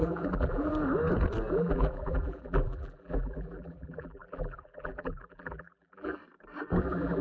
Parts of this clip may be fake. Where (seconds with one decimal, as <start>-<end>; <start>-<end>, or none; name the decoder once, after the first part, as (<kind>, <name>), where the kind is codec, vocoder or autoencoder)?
0.0-0.7 (vocoder, BigVGAN v2); 1.5-6.2; 6.8-7.2